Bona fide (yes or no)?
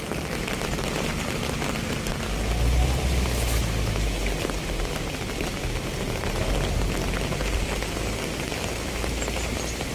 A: yes